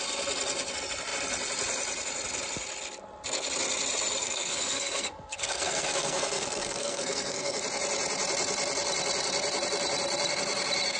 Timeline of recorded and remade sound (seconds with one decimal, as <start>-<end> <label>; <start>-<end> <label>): 0.0-4.2 recorded; 4.2-7.6 remade; 7.6-11.0 recorded